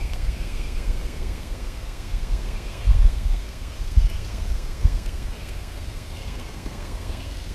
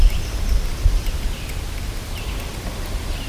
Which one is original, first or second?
second